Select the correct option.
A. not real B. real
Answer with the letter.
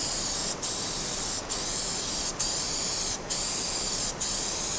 B